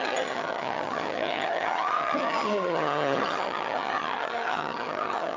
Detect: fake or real fake